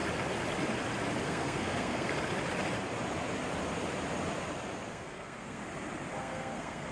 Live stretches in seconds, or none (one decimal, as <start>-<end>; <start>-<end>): 0.0-1.2; 2.1-4.9; 5.6-6.2